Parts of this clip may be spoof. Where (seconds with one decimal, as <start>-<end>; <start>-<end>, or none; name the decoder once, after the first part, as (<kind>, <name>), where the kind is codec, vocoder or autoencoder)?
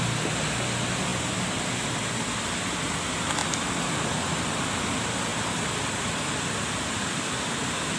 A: 1.1-1.9 (vocoder, BigVGAN v2); 5.3-7.6